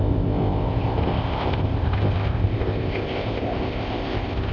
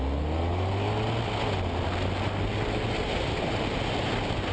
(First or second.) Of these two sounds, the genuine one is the second